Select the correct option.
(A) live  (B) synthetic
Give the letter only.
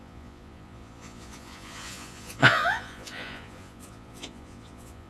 B